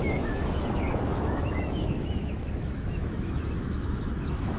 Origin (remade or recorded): remade